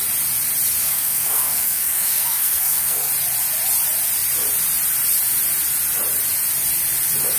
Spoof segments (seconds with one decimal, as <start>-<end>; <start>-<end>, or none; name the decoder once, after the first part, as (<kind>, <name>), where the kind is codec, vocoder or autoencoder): 0.8-3.1 (codec, SNAC)